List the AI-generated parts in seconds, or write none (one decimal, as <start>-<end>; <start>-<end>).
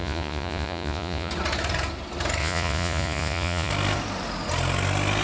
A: 0.0-1.3; 2.4-3.7